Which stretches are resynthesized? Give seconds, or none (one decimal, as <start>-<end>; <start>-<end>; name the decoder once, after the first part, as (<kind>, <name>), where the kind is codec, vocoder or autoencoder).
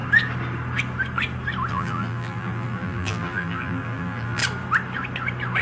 1.7-4.4 (vocoder, BigVGAN v2)